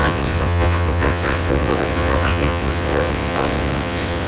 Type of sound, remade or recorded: remade